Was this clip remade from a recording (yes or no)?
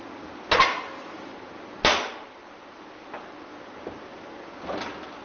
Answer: no